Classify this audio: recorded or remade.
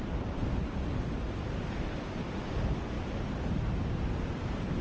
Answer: recorded